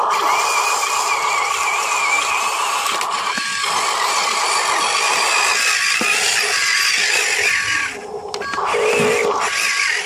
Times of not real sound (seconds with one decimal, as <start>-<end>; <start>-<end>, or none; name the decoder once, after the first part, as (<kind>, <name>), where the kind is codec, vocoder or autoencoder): none